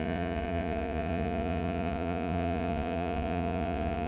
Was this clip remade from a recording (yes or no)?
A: yes